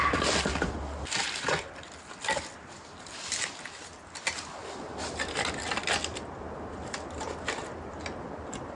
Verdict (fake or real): real